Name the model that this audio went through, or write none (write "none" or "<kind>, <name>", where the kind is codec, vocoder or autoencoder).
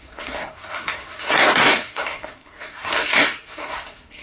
codec, SNAC